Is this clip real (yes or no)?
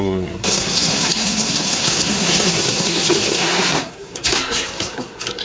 no